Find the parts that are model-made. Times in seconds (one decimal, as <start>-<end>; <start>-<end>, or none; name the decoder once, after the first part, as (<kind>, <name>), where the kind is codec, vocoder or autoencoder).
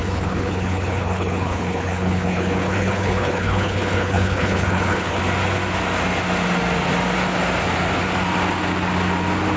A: 0.0-5.2 (codec, HILCodec)